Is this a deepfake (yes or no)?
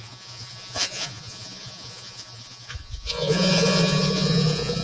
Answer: yes